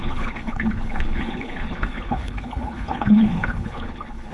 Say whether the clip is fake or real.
fake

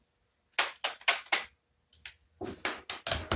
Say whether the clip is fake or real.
real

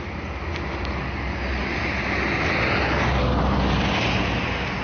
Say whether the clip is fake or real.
real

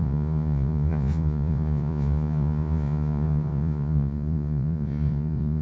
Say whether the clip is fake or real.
fake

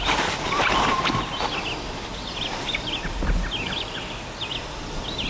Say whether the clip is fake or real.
real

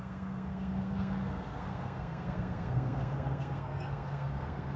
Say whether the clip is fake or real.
fake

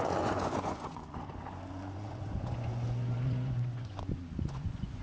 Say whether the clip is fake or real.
fake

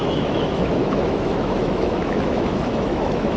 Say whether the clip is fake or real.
fake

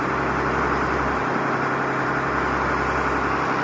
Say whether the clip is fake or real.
real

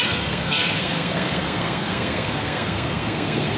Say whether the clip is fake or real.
fake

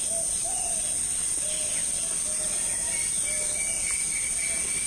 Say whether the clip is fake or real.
real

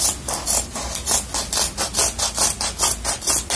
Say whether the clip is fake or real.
real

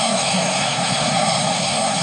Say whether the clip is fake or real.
fake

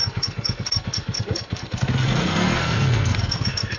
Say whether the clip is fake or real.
fake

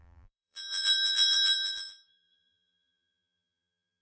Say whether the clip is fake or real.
fake